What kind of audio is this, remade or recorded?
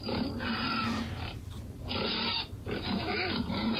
remade